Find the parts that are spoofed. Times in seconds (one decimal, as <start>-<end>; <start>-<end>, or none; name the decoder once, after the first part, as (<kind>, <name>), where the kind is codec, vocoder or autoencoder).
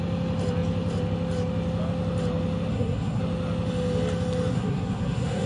2.7-3.2 (codec, SNAC); 4.5-5.5